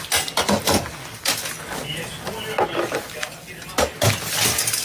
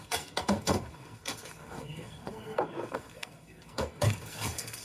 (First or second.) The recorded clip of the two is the first